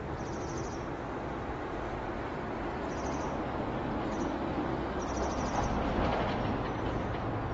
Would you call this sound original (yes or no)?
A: no